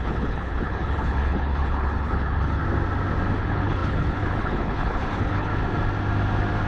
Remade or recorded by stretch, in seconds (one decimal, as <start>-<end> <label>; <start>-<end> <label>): 0.0-2.6 remade; 2.6-3.4 recorded; 3.4-5.5 remade; 5.5-6.7 recorded